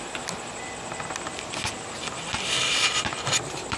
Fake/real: real